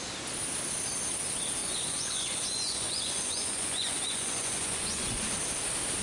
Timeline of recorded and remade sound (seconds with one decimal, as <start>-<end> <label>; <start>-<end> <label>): 0.0-1.6 recorded; 1.6-5.2 remade; 5.2-6.0 recorded